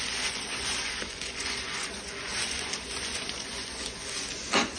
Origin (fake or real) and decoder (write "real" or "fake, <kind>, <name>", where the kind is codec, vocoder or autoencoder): fake, vocoder, Vocos